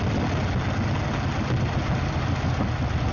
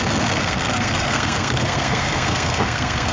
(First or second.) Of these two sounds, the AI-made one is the second